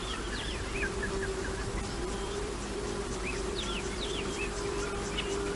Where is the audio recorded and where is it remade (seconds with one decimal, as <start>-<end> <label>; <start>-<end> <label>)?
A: 0.0-1.6 remade; 1.6-2.0 recorded; 2.0-4.9 remade; 4.9-5.6 recorded